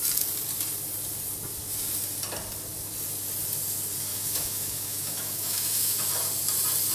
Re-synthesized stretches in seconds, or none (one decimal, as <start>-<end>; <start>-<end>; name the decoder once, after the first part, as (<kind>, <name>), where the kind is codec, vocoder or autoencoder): 4.1-6.0 (autoencoder, DAC-VAE)